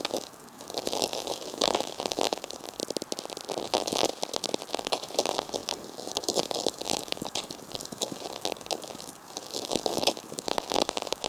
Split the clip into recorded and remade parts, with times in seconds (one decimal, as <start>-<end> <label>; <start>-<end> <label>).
0.0-2.8 remade; 2.8-3.6 recorded; 3.6-4.1 remade; 4.1-4.7 recorded; 4.7-11.3 remade